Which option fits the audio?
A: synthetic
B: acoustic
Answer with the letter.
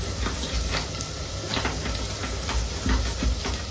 B